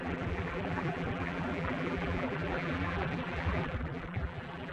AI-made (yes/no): yes